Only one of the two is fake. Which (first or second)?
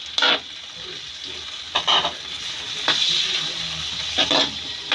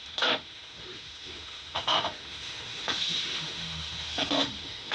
second